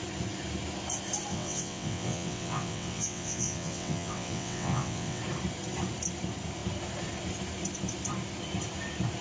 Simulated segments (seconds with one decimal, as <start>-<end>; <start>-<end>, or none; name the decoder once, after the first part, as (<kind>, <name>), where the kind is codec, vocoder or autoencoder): 1.3-5.2 (vocoder, WaveNeXt)